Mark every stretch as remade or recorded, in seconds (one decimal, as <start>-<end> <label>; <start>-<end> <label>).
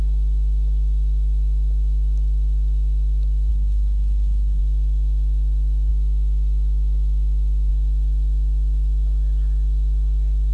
0.0-3.5 recorded; 3.5-4.6 remade; 4.6-10.5 recorded